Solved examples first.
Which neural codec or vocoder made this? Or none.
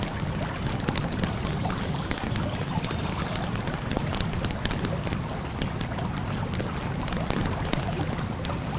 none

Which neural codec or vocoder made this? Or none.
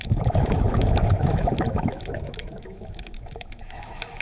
autoencoder, DAC-VAE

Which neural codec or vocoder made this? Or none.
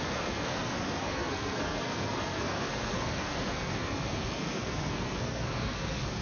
codec, SNAC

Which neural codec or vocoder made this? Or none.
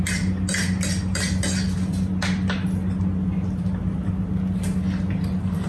none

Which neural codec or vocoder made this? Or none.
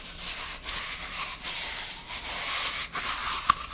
none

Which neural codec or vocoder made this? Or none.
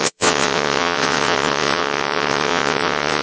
vocoder, WaveNeXt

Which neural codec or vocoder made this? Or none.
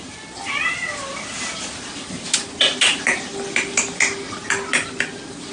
none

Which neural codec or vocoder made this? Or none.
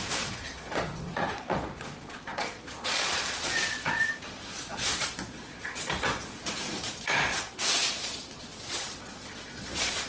vocoder, Vocos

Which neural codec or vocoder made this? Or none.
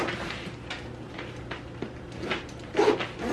none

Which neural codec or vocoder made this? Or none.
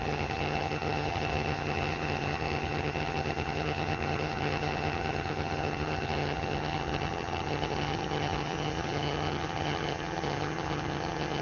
vocoder, HiFi-GAN